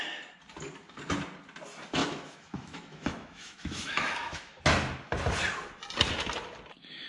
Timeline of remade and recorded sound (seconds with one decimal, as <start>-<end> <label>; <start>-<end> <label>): 0.0-2.0 recorded; 2.0-4.6 remade; 4.6-7.1 recorded